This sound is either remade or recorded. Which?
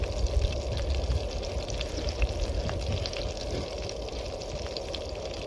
recorded